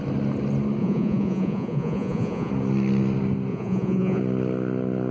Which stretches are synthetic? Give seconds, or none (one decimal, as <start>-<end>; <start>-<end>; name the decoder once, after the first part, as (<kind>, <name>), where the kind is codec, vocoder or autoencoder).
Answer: 0.8-2.5 (vocoder, Vocos); 3.5-4.2